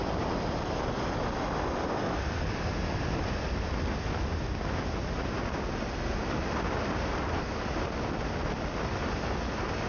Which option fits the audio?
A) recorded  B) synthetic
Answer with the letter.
A